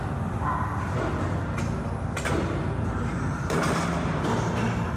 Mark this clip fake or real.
real